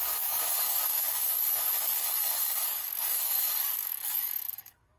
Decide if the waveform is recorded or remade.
remade